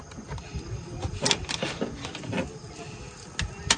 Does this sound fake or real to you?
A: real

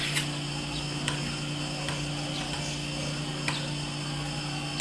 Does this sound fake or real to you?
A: real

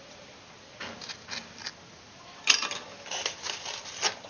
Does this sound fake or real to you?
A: real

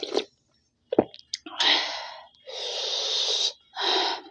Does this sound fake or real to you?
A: real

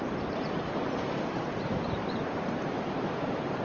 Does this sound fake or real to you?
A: fake